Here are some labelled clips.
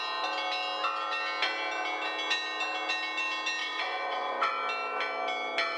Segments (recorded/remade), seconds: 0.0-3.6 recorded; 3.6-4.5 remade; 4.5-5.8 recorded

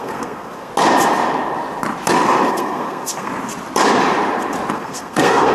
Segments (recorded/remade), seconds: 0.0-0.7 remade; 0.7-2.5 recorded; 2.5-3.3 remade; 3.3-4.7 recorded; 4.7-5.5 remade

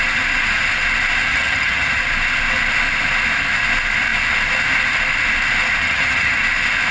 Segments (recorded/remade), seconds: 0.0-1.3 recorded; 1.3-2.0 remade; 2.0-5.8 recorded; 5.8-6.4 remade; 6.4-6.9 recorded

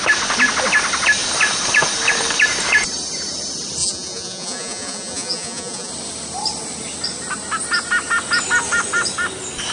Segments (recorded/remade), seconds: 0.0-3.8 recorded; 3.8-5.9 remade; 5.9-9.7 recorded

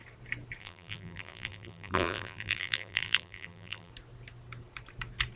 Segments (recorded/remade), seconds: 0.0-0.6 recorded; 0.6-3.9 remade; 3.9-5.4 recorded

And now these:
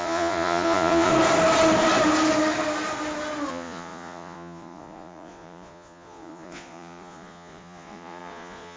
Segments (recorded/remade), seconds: 0.0-1.1 remade; 1.1-3.5 recorded; 3.5-8.8 remade